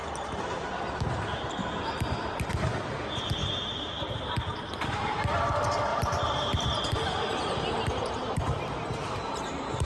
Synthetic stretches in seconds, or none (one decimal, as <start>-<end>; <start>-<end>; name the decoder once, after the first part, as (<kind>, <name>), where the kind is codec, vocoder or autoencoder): 0.0-0.6 (vocoder, BigVGAN v2); 1.6-2.4; 3.4-5.4; 5.9-8.6